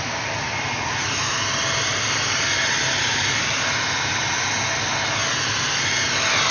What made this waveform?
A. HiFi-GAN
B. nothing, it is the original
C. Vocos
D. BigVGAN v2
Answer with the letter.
B